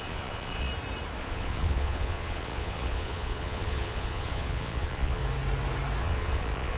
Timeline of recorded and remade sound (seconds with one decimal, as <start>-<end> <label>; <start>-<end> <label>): 0.0-0.7 remade; 0.7-1.2 recorded; 1.2-5.2 remade; 5.2-6.0 recorded; 6.0-6.8 remade